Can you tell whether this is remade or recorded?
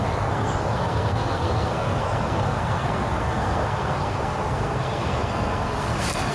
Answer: remade